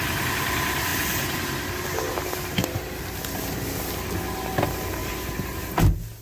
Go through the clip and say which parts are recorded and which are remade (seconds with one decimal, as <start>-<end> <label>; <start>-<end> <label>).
0.0-5.0 recorded; 5.0-5.6 remade; 5.6-6.2 recorded

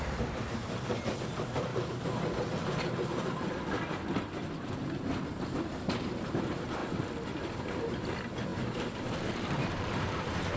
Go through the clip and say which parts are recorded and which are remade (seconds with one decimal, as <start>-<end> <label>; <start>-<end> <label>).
0.0-1.7 remade; 1.7-4.7 recorded; 4.7-6.8 remade; 6.8-7.6 recorded; 7.6-10.6 remade

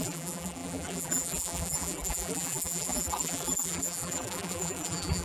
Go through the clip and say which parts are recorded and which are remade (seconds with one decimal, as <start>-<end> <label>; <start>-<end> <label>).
0.0-5.2 remade

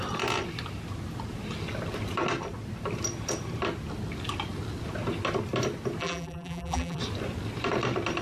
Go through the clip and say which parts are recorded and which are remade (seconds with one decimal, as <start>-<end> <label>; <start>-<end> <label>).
0.0-6.0 recorded; 6.0-7.0 remade; 7.0-8.2 recorded

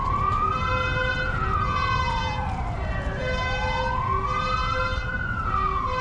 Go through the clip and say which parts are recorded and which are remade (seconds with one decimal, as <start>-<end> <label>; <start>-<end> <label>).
0.0-1.1 recorded; 1.1-1.6 remade; 1.6-4.6 recorded; 4.6-5.5 remade; 5.5-6.0 recorded

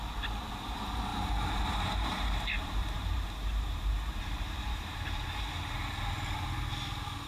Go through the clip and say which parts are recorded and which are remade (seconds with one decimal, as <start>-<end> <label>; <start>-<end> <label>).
0.0-1.1 recorded; 1.1-5.5 remade; 5.5-7.3 recorded